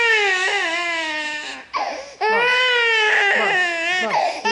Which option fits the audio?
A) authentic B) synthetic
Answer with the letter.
A